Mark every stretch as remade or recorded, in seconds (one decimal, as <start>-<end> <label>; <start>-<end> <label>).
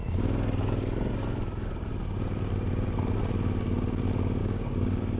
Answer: 0.0-4.4 recorded; 4.4-5.2 remade